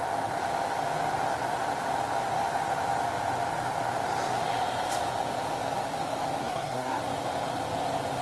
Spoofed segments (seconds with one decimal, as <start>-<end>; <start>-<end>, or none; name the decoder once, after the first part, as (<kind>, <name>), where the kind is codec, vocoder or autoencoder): 6.4-7.0 (codec, SNAC)